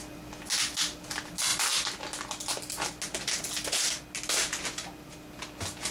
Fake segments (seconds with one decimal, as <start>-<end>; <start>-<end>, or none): none